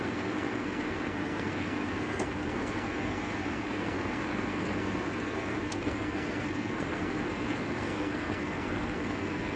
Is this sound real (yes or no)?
no